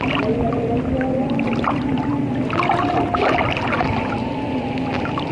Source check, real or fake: real